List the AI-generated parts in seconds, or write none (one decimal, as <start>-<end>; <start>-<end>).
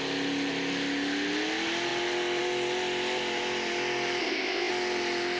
4.2-4.7